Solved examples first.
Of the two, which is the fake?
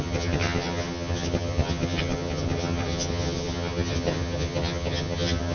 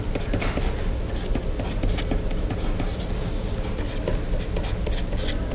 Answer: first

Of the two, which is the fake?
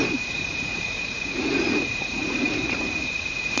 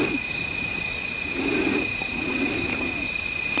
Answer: first